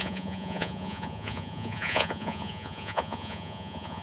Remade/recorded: remade